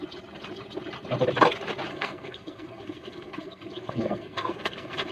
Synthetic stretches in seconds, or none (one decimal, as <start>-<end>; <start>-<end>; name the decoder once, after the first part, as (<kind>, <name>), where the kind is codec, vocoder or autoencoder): 1.9-5.1 (codec, SNAC)